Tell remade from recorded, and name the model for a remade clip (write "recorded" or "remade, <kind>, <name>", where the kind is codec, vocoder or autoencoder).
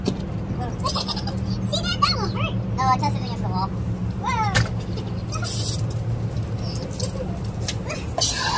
recorded